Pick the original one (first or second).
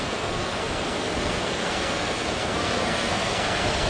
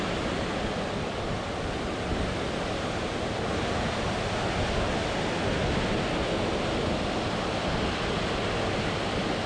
second